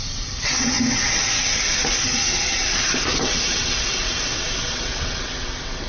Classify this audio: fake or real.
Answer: fake